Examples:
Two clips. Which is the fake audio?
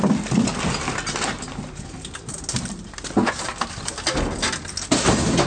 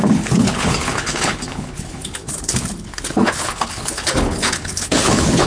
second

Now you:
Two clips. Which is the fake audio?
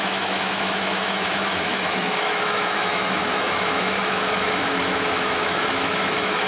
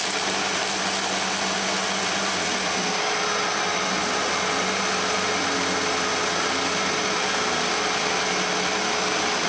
first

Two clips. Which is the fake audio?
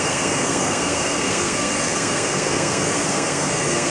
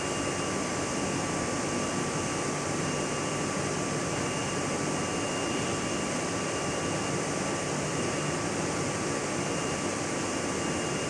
first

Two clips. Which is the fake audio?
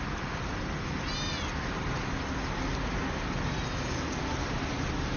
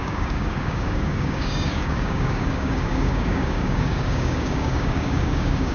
second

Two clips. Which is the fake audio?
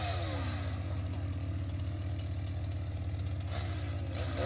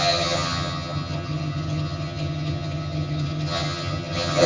second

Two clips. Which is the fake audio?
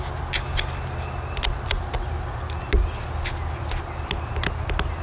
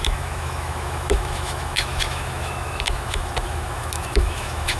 second